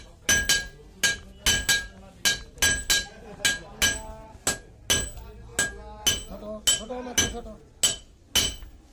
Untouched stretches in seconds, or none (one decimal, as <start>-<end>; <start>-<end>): 0.0-8.9